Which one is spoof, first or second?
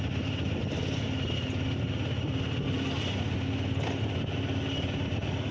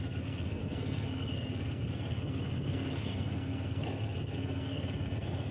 second